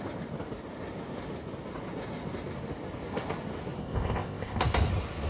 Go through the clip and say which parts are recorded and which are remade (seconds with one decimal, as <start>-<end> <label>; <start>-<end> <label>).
0.0-3.8 recorded; 3.8-4.6 remade; 4.6-5.3 recorded